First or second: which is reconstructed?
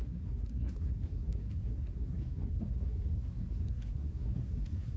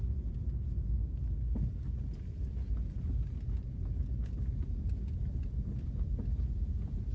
first